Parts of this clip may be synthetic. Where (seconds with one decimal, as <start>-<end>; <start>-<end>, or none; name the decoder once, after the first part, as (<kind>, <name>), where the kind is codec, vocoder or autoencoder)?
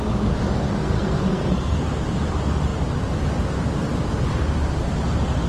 0.8-2.0 (codec, SNAC)